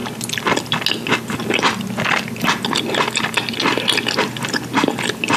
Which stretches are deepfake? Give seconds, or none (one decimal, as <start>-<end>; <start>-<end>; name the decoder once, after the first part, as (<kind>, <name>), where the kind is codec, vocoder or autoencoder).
none